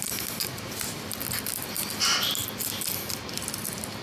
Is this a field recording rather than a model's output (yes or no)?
yes